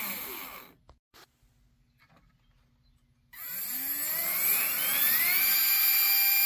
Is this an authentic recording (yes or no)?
yes